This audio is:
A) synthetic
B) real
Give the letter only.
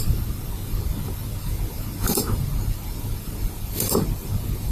A